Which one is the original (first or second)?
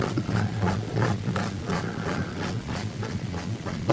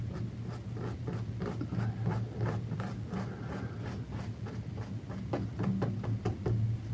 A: second